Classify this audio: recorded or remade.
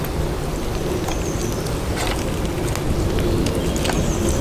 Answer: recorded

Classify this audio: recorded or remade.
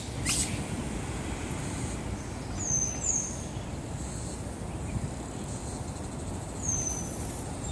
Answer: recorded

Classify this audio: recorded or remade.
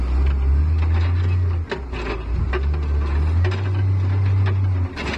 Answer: recorded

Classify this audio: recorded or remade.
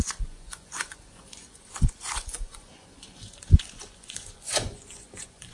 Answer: remade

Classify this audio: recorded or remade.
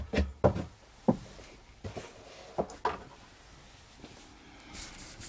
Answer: recorded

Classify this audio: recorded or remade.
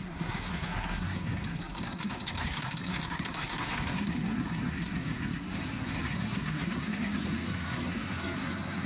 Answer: remade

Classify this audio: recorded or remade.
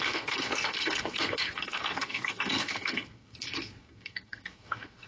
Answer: remade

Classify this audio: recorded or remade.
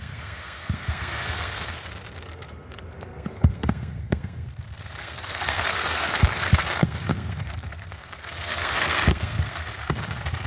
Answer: remade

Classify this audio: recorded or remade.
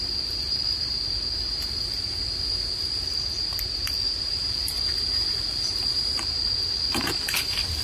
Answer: recorded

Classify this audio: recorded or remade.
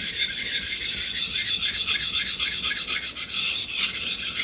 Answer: recorded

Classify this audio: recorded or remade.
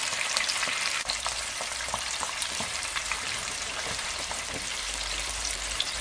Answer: remade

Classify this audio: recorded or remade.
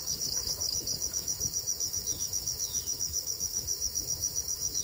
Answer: remade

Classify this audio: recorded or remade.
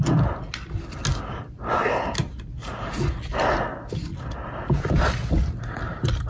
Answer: recorded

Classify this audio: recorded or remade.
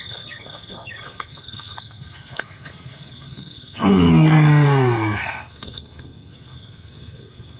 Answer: remade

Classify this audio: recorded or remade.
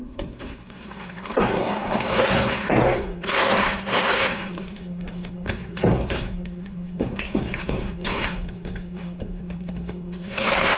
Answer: remade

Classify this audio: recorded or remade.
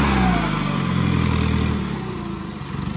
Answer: recorded